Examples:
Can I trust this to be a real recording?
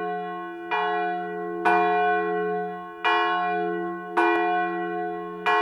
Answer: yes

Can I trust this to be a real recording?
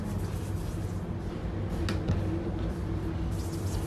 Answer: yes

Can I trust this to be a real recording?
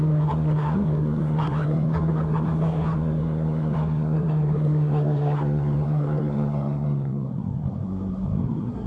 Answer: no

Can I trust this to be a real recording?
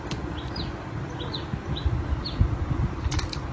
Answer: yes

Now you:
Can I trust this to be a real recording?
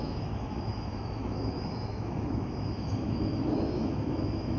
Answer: no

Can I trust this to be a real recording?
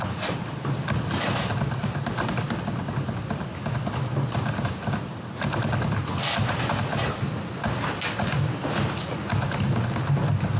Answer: yes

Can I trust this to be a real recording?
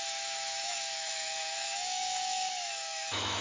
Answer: no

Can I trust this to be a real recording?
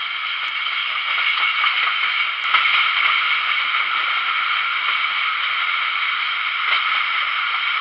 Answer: yes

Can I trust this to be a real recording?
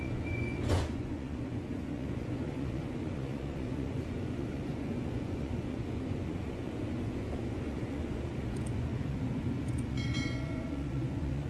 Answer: no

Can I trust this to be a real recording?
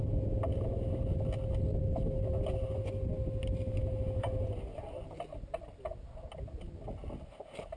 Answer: yes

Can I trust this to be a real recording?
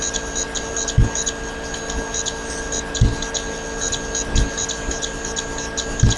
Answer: yes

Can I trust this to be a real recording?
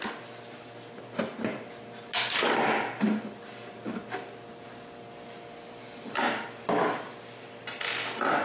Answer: yes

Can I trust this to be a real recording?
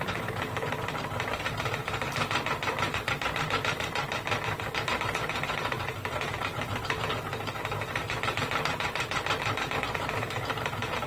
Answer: no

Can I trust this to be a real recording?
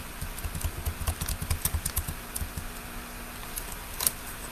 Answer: yes